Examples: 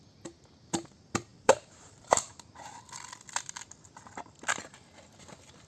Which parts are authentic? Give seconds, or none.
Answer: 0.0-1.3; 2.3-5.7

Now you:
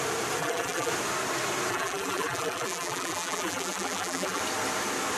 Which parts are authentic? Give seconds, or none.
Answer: 0.0-0.4; 0.9-1.7; 4.4-5.2

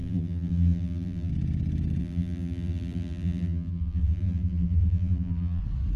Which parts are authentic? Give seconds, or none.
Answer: 1.3-2.0; 5.6-6.0